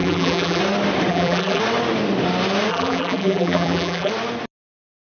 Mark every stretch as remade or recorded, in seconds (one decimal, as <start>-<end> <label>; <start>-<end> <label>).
0.0-0.6 remade; 0.6-1.1 recorded; 1.1-1.6 remade; 1.6-2.7 recorded; 2.7-4.1 remade; 4.1-5.0 recorded